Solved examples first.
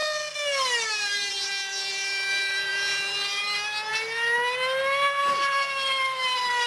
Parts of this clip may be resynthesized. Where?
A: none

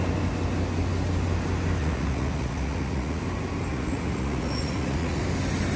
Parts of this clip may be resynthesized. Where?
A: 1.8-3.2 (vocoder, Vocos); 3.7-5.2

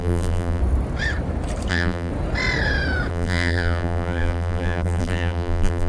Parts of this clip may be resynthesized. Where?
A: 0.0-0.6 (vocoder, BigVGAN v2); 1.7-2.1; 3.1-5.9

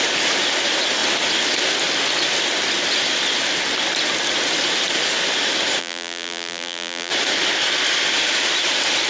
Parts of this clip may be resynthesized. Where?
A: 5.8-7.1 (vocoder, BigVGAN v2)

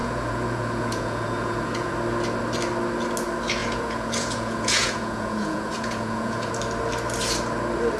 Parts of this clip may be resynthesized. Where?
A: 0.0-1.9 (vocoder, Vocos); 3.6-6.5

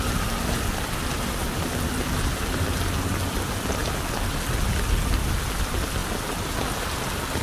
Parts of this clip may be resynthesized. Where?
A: none

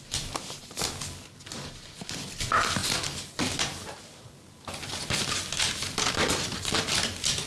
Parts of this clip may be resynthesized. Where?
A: none

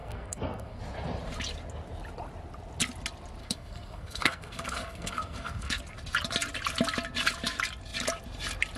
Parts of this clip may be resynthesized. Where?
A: 0.0-0.8 (codec, SNAC); 3.4-5.8